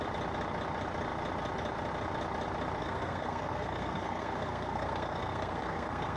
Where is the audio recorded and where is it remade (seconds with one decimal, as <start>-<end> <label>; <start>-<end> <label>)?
0.0-2.8 recorded; 2.8-6.2 remade